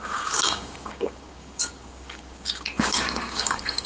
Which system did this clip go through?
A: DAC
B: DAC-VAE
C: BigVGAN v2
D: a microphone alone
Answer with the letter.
A